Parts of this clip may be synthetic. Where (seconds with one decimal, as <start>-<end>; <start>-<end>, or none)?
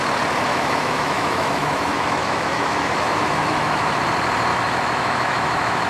0.5-4.0; 4.5-5.9